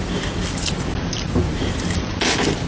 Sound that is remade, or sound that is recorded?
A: recorded